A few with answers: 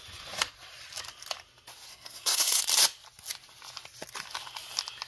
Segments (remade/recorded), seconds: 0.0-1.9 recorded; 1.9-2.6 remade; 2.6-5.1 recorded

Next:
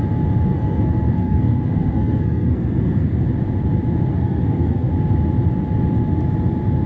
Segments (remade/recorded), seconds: 0.0-0.5 recorded; 0.5-3.2 remade; 3.2-4.1 recorded; 4.1-4.9 remade; 4.9-6.9 recorded

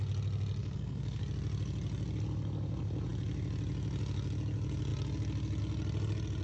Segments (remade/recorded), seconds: 0.0-0.6 recorded; 0.6-1.2 remade; 1.2-6.4 recorded